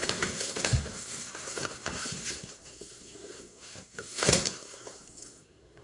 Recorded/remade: remade